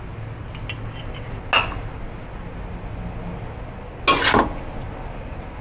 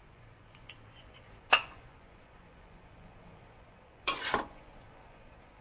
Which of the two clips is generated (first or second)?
second